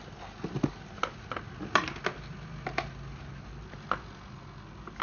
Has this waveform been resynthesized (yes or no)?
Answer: no